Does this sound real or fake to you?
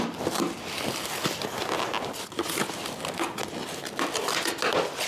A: real